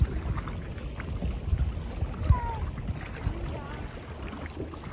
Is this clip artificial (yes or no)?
no